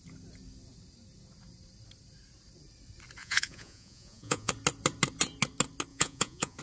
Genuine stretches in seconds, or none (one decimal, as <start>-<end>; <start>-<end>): 0.0-3.2; 4.5-5.9